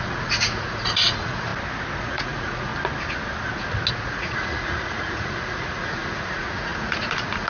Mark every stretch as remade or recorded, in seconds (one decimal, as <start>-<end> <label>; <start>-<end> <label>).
0.0-1.5 remade; 1.5-2.0 recorded; 2.0-2.7 remade; 2.7-3.9 recorded; 3.9-7.5 remade